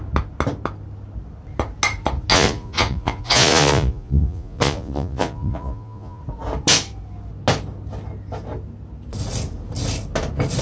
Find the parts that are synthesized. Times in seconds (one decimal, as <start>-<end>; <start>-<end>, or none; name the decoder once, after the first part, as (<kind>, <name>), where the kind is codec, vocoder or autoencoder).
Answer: 2.3-6.2 (vocoder, Vocos)